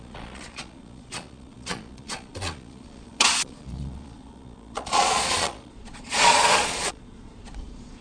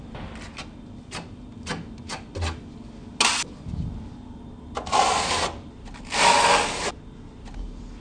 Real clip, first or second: second